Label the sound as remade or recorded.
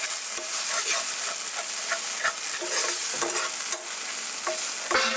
recorded